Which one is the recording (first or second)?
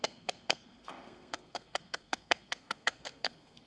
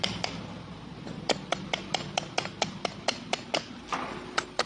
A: second